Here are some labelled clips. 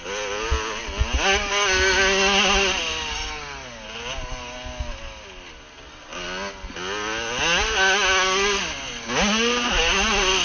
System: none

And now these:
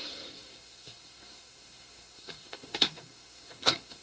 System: codec, SNAC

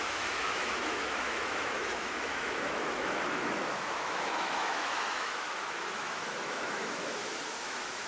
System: autoencoder, DAC-VAE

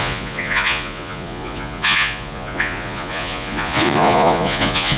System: vocoder, Vocos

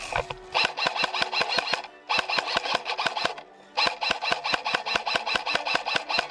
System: none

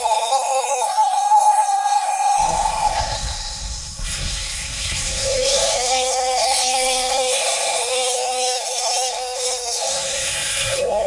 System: codec, SNAC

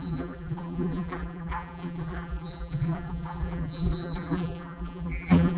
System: vocoder, BigVGAN v2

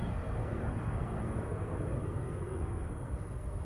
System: codec, SNAC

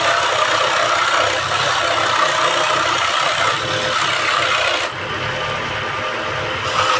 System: none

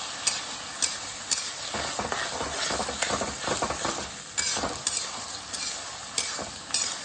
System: none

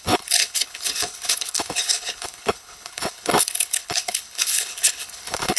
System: codec, HILCodec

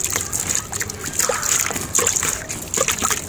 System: none